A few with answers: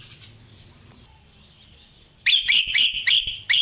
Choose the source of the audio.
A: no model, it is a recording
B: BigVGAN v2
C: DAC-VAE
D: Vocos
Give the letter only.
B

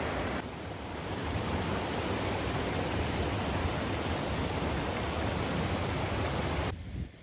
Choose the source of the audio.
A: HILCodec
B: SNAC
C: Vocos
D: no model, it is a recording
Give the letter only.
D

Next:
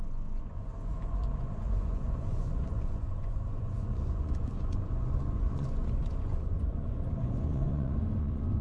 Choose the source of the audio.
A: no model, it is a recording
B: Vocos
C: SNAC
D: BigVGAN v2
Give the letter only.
B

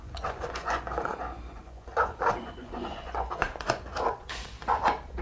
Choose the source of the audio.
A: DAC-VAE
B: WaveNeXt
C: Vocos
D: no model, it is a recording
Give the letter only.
C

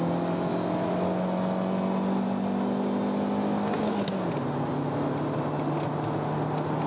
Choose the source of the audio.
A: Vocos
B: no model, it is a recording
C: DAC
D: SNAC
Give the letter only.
B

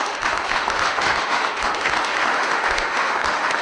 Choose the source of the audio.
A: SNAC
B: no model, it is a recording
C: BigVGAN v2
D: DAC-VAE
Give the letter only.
D